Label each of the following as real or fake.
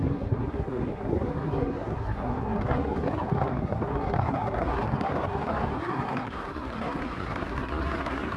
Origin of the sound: fake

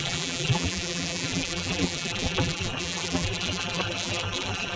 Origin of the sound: fake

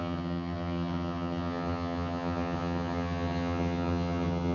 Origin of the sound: fake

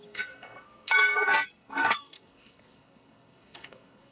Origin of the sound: fake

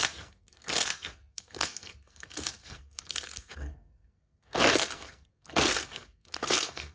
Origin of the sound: fake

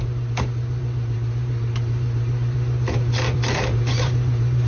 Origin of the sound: fake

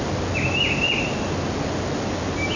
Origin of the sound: real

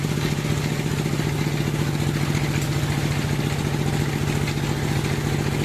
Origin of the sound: real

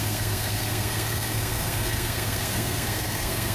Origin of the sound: fake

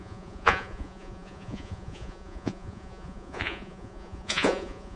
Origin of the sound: fake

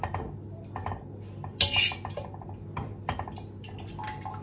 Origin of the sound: real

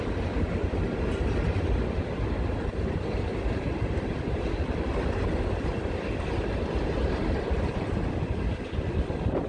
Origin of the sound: real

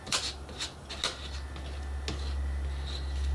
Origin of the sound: real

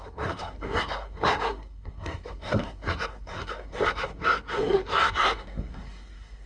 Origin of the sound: fake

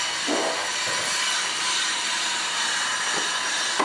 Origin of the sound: real